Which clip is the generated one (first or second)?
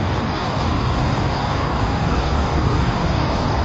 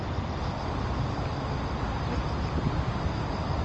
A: first